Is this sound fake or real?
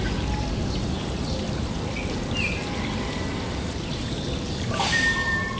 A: real